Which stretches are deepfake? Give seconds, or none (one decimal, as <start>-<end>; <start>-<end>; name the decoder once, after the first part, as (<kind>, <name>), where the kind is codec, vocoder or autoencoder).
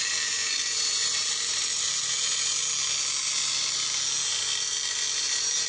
none